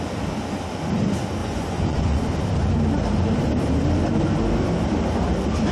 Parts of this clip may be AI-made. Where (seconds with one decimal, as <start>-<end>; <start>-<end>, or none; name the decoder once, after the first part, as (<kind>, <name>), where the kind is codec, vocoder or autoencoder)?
1.4-2.2 (vocoder, Vocos)